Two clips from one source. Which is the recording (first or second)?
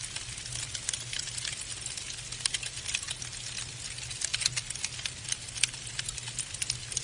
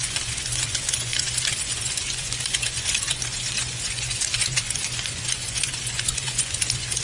first